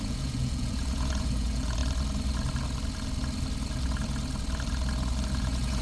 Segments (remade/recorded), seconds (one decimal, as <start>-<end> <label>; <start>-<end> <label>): 0.0-1.8 remade; 1.8-5.3 recorded; 5.3-5.8 remade